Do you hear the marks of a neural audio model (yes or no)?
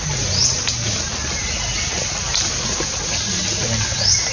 no